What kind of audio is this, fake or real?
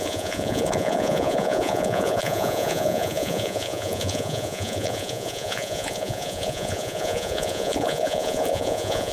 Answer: fake